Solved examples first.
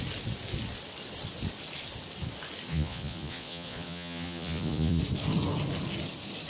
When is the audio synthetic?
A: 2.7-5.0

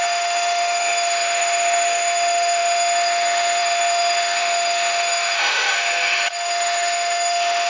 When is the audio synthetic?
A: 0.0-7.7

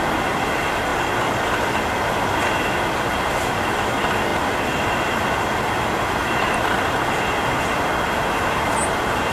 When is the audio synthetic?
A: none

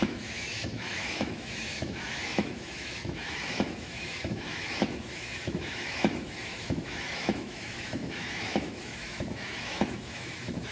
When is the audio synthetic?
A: 0.0-10.7

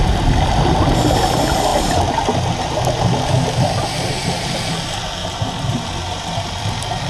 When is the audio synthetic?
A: 5.2-5.9

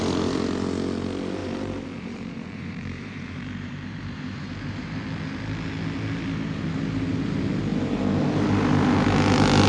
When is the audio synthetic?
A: 1.4-5.0